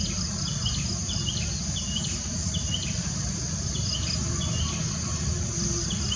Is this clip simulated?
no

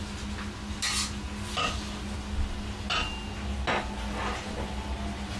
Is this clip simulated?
no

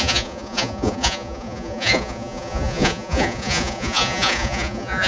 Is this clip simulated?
yes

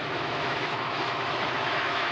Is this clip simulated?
yes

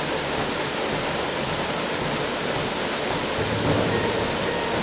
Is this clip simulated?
no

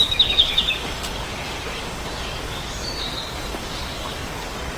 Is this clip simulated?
yes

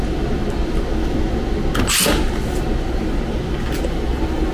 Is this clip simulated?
no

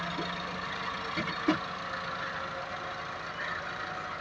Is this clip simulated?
no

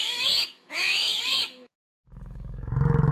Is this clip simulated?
yes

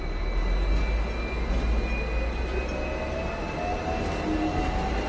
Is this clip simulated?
no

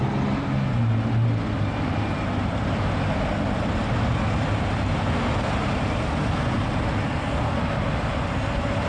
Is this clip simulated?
no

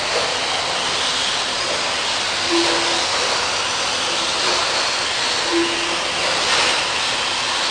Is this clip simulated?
no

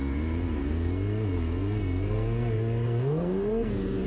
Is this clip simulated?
yes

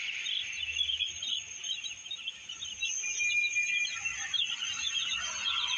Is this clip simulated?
no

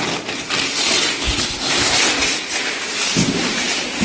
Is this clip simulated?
no